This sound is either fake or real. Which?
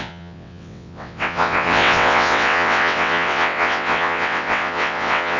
fake